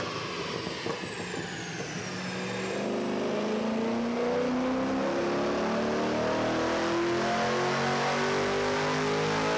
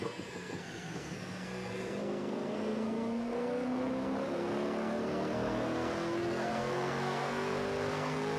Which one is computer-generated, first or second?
second